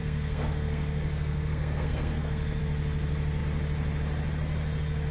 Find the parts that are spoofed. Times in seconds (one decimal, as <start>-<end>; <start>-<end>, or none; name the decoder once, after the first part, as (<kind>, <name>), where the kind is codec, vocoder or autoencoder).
0.0-2.6 (codec, SNAC)